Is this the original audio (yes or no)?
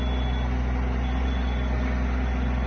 yes